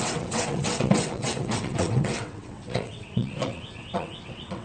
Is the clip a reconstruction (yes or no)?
yes